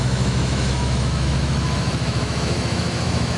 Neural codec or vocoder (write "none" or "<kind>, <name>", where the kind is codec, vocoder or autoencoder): autoencoder, DAC-VAE